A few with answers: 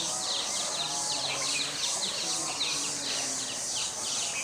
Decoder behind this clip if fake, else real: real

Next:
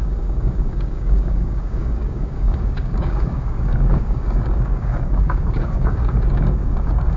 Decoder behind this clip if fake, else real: fake, codec, DAC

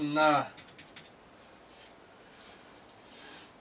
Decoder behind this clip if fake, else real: real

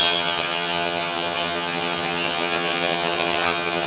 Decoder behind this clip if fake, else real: fake, vocoder, HiFi-GAN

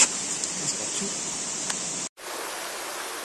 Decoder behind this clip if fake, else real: real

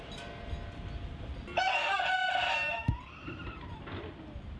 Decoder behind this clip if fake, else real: real